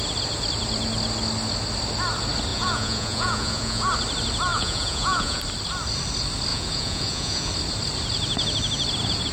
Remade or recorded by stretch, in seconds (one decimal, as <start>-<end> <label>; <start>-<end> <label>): 0.0-2.5 recorded; 2.5-3.9 remade; 3.9-4.5 recorded; 4.5-5.4 remade; 5.4-6.5 recorded; 6.5-7.5 remade; 7.5-9.3 recorded